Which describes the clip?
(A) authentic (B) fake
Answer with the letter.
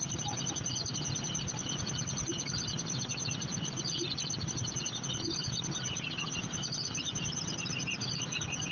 A